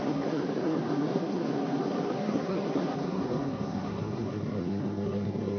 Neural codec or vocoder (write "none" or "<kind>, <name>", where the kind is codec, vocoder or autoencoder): codec, SNAC